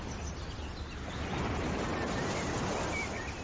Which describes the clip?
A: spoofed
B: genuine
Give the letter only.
B